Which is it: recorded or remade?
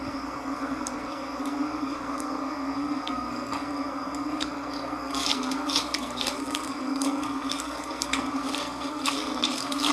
remade